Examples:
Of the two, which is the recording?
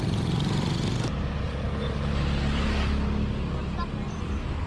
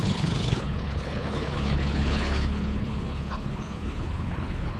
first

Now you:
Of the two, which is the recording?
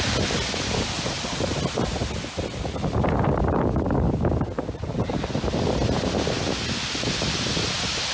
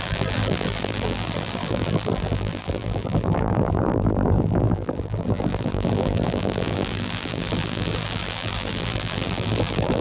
first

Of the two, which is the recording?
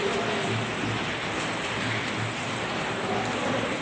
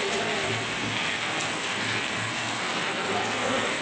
first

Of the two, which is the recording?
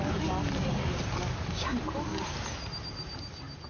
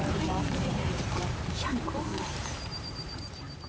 first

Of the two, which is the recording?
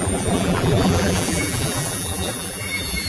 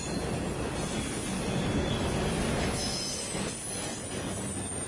second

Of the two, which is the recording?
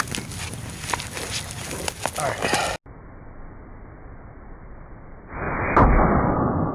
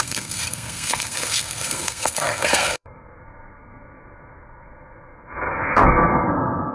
first